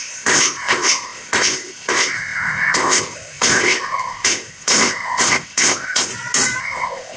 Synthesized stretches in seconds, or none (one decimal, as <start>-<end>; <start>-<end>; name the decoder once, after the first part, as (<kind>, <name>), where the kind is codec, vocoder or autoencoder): 0.0-6.1 (codec, ZipCodec); 6.6-7.2